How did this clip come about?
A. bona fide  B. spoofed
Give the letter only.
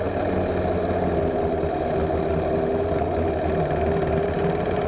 A